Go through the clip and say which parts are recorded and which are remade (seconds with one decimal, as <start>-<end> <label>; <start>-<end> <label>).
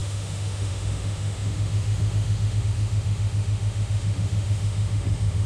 0.0-5.5 remade